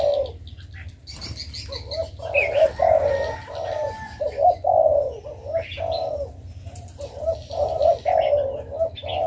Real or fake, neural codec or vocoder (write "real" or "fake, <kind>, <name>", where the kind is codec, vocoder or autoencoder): real